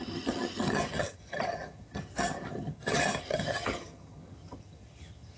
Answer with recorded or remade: remade